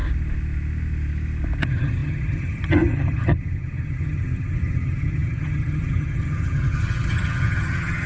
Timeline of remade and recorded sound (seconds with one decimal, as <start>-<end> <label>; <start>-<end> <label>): 0.0-1.6 recorded; 1.6-8.1 remade